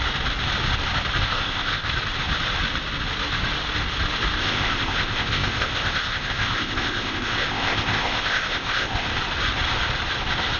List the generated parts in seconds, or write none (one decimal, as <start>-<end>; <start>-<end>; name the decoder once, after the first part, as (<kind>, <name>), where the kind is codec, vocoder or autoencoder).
1.2-1.9 (codec, ZipCodec); 4.4-9.1